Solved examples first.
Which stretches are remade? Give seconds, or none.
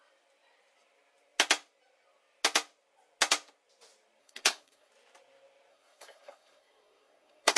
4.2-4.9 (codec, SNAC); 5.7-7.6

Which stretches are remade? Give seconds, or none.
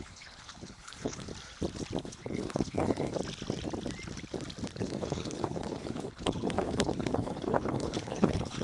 0.0-1.3 (codec, HILCodec); 2.0-3.2; 4.8-8.6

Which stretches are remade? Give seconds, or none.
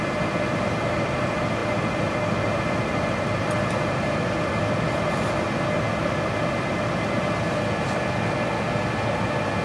none